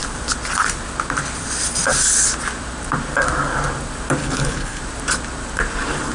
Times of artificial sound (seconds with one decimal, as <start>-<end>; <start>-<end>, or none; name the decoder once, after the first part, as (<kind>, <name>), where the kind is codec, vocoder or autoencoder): 4.2-4.8 (codec, HILCodec)